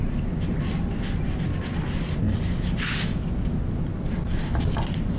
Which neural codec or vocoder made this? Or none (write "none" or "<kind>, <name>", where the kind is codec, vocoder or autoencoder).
none